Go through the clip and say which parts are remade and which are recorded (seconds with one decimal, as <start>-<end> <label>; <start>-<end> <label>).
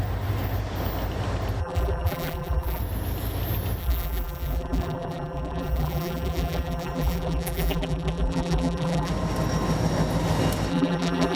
0.0-1.6 recorded; 1.6-2.8 remade; 2.8-3.8 recorded; 3.8-9.1 remade; 9.1-10.7 recorded; 10.7-11.4 remade